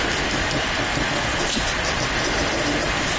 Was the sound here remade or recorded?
recorded